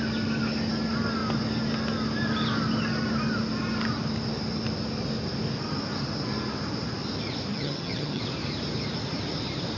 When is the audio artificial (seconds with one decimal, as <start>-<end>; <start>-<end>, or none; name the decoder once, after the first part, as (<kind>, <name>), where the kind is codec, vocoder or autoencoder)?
7.5-8.2 (vocoder, HiFi-GAN)